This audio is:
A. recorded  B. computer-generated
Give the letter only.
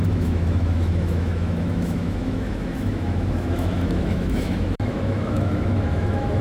B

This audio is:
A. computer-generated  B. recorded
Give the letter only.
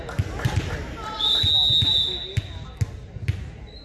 B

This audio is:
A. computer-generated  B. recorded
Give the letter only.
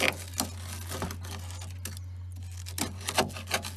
B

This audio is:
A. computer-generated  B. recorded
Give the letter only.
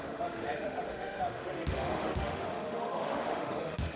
A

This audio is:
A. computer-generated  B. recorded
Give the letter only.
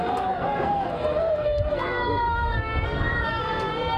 A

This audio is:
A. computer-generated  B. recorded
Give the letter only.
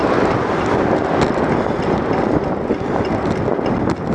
B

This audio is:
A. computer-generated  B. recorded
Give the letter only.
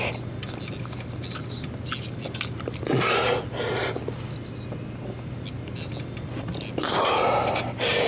B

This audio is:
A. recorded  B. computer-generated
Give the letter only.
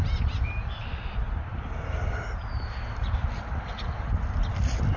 A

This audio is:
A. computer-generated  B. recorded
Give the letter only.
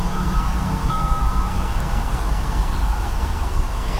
A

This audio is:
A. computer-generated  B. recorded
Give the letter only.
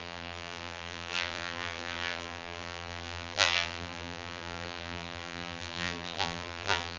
A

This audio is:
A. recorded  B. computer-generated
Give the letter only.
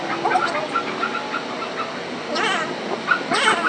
A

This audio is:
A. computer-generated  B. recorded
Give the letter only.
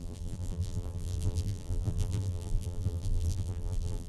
A